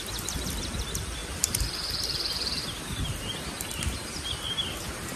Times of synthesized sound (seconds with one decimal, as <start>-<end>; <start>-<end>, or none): none